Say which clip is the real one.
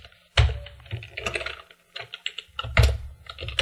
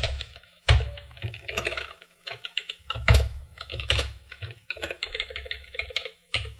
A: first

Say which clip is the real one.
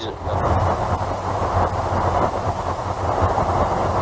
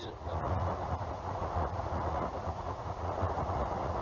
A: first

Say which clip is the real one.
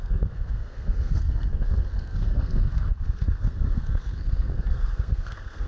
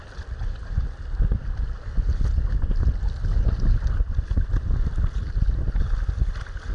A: second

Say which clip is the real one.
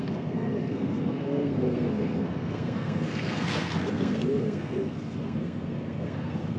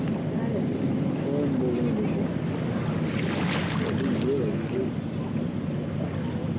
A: second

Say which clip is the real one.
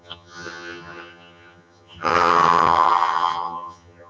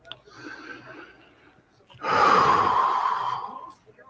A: second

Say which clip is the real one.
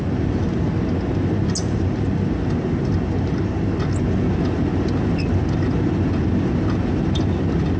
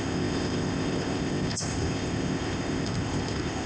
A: first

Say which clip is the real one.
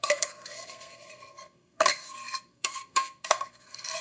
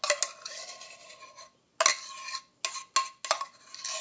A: second